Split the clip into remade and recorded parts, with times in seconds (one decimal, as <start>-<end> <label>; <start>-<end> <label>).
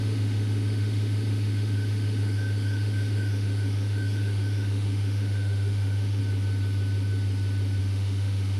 0.0-6.2 remade; 6.2-7.8 recorded; 7.8-8.6 remade